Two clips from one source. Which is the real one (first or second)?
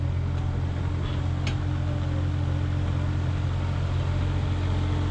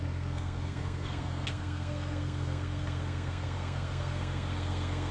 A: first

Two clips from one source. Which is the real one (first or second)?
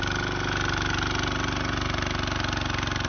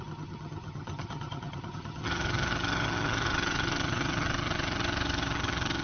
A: first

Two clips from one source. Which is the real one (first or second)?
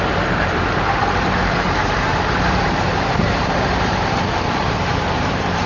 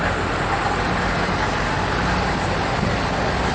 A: second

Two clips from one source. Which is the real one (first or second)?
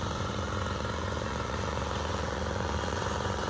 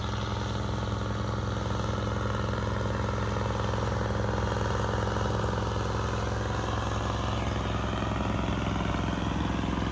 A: second